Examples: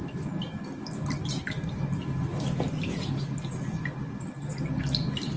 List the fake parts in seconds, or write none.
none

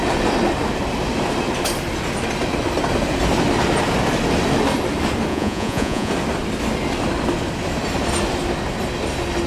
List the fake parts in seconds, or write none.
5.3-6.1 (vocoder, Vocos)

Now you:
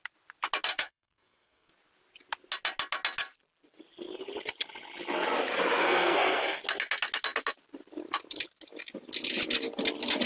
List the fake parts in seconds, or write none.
0.7-1.7 (codec, SNAC); 5.8-6.6

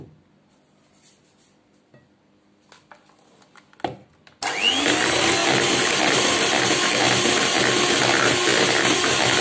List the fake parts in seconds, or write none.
5.4-6.7 (vocoder, BigVGAN v2)

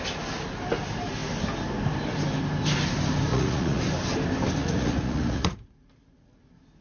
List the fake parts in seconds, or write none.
3.3-3.8 (vocoder, Vocos); 4.6-5.7